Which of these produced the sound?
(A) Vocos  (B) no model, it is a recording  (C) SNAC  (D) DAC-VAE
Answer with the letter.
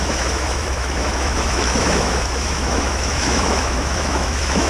D